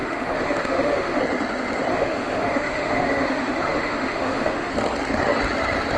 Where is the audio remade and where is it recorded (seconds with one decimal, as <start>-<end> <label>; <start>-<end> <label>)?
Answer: 0.0-1.2 remade; 1.2-1.9 recorded; 1.9-4.7 remade; 4.7-6.0 recorded